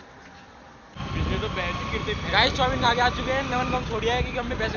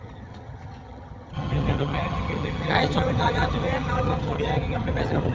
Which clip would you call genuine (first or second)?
first